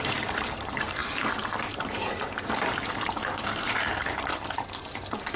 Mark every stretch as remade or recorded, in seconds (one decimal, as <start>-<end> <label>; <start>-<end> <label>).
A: 0.0-4.3 remade; 4.3-4.9 recorded; 4.9-5.4 remade